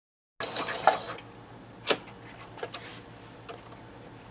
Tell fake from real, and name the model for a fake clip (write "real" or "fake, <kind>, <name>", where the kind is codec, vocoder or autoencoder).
real